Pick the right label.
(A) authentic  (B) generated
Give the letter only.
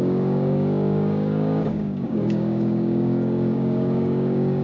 B